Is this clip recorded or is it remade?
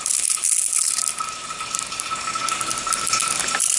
recorded